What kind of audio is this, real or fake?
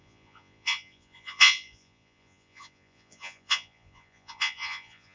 fake